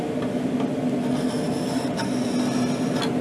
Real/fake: real